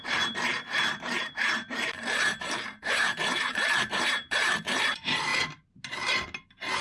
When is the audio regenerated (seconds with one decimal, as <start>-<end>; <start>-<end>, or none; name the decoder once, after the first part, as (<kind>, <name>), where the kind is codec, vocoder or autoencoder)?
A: 0.0-5.3 (vocoder, BigVGAN v2)